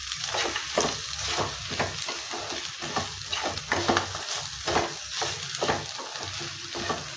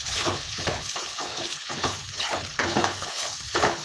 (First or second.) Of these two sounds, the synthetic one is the second